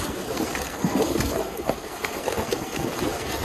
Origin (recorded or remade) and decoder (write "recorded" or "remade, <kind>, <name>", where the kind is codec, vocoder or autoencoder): remade, codec, SNAC